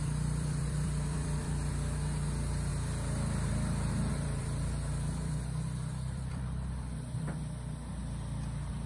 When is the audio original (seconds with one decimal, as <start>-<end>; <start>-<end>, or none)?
2.7-4.1; 8.0-8.9